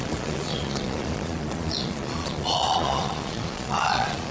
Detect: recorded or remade remade